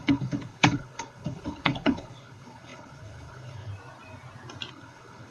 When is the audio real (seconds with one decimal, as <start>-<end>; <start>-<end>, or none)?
3.7-4.7